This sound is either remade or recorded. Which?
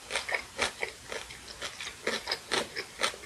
recorded